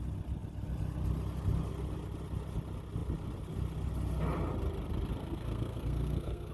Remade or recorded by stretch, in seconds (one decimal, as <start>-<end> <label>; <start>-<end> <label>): 0.0-5.2 recorded; 5.2-6.5 remade